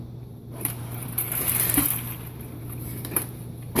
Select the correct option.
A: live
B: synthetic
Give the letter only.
B